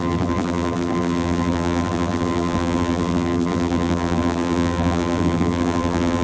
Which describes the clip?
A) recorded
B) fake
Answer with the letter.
B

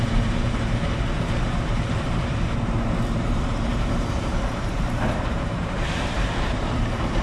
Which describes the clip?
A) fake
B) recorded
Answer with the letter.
A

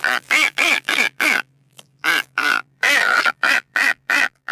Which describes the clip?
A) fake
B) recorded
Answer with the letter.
A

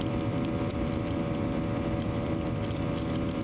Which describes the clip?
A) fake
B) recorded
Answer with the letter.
A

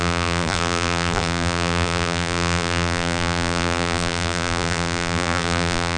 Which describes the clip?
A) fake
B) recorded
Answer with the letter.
A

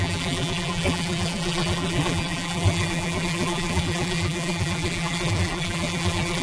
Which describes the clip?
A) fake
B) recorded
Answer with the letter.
A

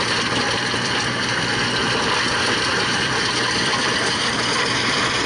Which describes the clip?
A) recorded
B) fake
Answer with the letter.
B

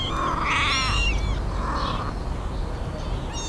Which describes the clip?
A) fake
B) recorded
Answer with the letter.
B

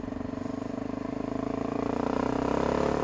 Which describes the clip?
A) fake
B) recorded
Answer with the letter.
A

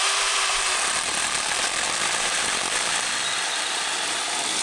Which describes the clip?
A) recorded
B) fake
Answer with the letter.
B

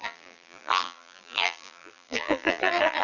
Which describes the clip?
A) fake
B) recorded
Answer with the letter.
A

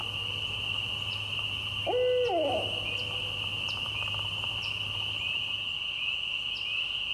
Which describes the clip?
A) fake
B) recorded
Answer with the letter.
B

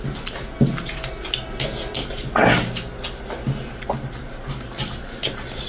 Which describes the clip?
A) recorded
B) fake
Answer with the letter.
A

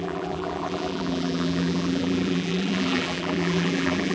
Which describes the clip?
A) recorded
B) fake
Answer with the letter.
B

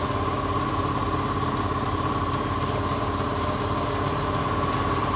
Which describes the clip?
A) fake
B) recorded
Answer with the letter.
B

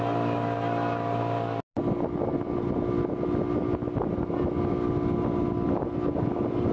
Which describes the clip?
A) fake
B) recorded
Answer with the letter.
B